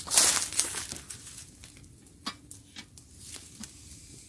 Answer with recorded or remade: recorded